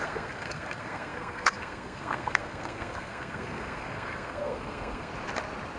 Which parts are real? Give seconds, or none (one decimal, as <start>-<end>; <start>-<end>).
5.1-5.8